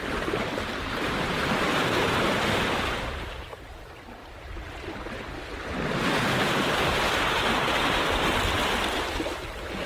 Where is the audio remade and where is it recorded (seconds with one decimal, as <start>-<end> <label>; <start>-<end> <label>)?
0.0-1.7 recorded; 1.7-2.4 remade; 2.4-9.9 recorded